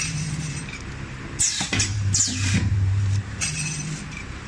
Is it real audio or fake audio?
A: fake